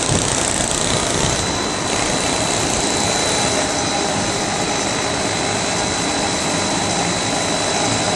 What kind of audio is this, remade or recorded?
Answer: recorded